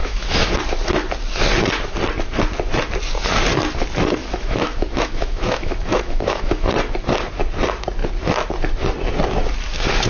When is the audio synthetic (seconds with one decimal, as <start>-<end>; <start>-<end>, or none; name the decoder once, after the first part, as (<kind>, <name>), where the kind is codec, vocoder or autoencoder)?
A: 0.0-0.5 (autoencoder, DAC-VAE); 4.2-6.7